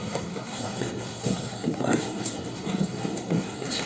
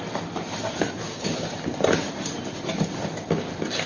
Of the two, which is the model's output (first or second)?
first